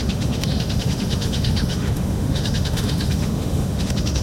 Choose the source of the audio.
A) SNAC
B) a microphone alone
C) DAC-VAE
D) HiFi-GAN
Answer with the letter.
C